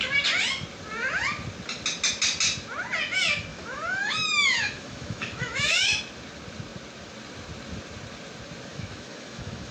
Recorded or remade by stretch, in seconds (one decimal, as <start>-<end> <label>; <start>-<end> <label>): 0.0-3.5 recorded; 3.5-6.0 remade; 6.0-8.7 recorded; 8.7-9.7 remade